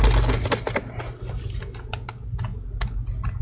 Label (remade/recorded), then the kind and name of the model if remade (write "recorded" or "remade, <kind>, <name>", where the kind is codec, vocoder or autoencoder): recorded